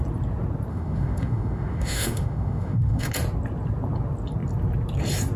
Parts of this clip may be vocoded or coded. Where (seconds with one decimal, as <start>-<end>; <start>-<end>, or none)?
0.7-3.1